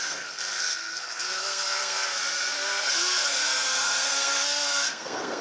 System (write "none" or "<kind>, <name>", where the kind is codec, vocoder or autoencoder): codec, SNAC